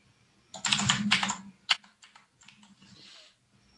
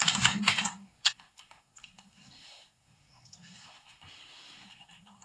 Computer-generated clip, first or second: second